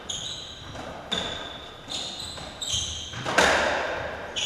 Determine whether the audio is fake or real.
real